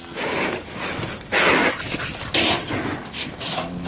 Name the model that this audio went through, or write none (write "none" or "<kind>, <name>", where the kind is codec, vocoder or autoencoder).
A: none